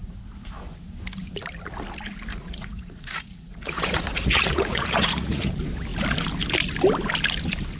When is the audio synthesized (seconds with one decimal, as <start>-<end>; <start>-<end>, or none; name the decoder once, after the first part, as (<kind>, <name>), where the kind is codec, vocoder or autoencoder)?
2.3-5.5 (vocoder, Vocos)